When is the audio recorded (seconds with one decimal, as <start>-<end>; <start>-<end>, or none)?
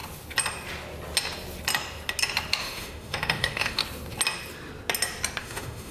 0.0-2.6; 3.8-5.4